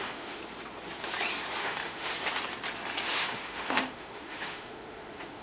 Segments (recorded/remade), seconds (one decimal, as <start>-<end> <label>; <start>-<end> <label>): 0.0-0.4 remade; 0.4-1.6 recorded; 1.6-2.1 remade; 2.1-3.1 recorded; 3.1-5.4 remade